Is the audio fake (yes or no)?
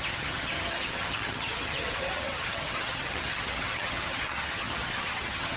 yes